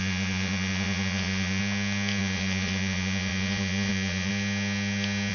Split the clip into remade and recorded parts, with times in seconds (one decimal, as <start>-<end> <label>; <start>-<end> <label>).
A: 0.0-1.6 remade; 1.6-2.2 recorded; 2.2-4.3 remade; 4.3-5.3 recorded